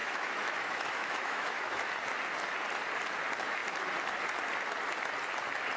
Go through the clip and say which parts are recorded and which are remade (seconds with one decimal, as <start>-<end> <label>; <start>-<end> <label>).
0.0-1.9 remade; 1.9-5.8 recorded